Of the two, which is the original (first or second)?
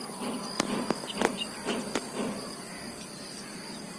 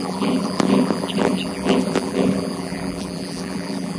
first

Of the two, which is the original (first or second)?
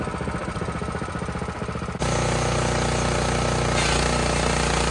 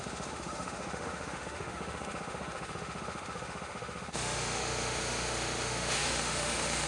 first